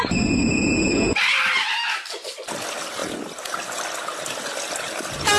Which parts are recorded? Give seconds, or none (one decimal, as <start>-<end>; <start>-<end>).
0.0-5.4